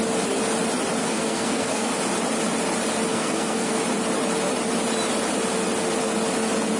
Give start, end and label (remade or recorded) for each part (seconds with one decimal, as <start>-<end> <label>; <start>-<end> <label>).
0.0-1.0 recorded; 1.0-1.9 remade; 1.9-3.1 recorded; 3.1-3.8 remade; 3.8-6.8 recorded